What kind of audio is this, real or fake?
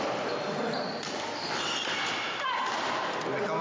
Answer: real